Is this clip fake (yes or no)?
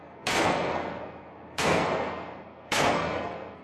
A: yes